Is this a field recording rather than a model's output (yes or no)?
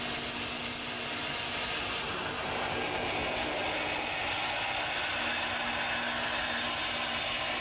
yes